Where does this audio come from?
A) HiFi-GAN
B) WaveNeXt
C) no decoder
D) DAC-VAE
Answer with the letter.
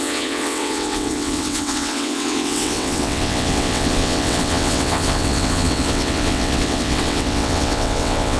B